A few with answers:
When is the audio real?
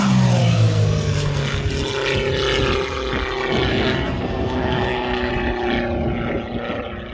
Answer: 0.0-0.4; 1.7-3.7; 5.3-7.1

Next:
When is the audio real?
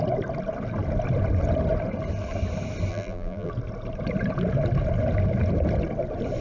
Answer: 0.0-2.9; 3.5-6.4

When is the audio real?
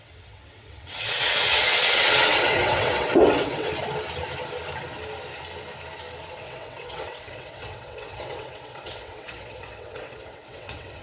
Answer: 3.7-6.3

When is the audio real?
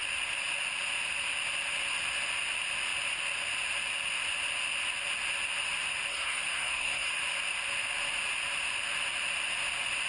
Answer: 0.0-6.1; 7.2-10.1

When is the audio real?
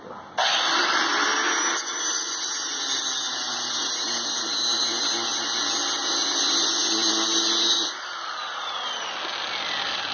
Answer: 0.0-10.1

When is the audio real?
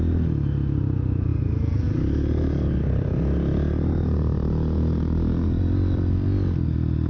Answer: 0.0-7.1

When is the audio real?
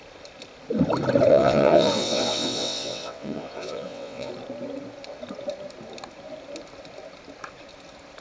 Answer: 0.0-1.3; 4.3-8.2